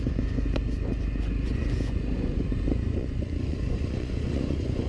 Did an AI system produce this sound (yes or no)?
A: yes